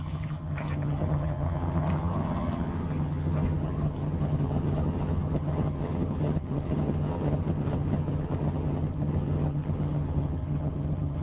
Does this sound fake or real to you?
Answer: fake